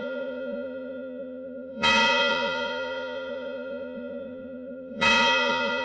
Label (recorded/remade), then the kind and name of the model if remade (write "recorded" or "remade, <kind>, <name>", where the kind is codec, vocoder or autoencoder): remade, vocoder, Vocos